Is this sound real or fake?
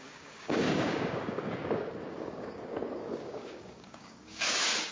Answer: fake